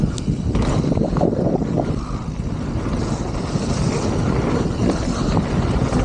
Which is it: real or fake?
real